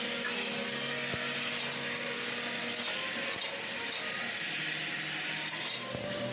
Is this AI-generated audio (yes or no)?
no